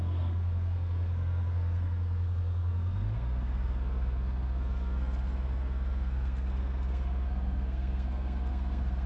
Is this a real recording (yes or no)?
no